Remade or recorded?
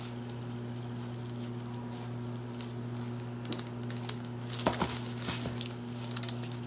recorded